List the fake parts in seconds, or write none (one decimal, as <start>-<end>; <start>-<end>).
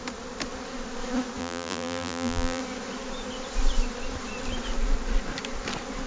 1.4-2.6